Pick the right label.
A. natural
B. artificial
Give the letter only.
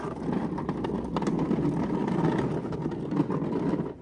A